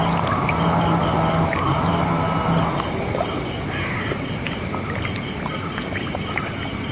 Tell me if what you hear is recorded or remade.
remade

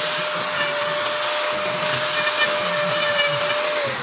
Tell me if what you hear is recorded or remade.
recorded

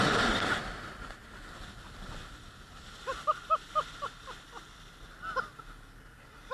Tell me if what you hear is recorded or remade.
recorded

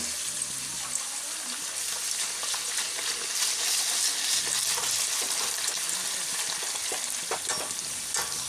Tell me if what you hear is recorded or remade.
recorded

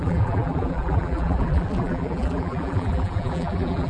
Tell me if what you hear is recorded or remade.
remade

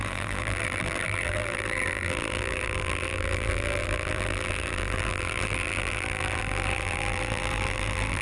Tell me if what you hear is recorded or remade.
remade